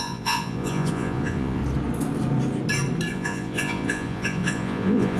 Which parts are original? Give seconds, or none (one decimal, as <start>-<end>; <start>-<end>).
1.6-3.1